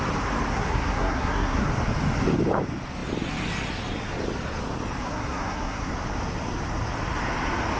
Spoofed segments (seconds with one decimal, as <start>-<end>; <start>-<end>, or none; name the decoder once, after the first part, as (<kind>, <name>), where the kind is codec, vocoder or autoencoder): 0.5-1.7 (codec, SNAC); 5.0-5.9